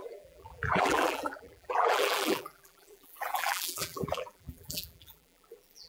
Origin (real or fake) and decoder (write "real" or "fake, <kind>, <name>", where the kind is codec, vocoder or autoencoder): fake, vocoder, BigVGAN v2